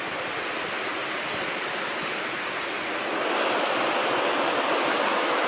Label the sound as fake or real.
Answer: real